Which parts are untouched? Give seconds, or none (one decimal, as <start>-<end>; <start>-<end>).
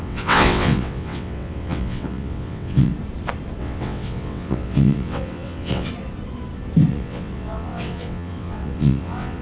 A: 2.9-3.6; 5.9-6.9